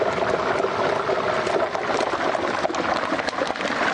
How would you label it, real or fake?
real